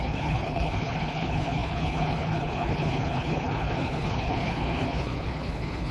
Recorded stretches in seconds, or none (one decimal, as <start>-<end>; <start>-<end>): none